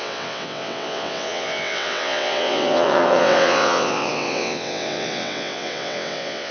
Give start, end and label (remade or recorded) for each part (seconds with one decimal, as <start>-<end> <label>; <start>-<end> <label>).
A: 0.0-6.5 remade